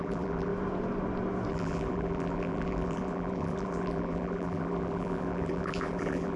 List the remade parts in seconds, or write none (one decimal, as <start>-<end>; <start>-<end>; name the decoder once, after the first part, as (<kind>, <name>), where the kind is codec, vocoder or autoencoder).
0.0-0.5 (vocoder, BigVGAN v2); 1.5-6.4